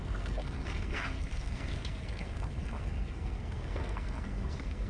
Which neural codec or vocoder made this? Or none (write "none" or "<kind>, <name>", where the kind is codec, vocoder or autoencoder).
codec, SNAC